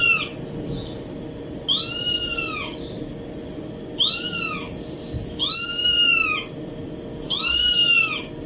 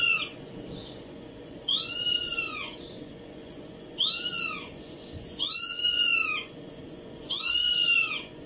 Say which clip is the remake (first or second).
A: second